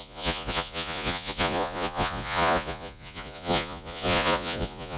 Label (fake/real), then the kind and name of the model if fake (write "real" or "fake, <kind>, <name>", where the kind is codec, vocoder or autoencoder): fake, vocoder, Vocos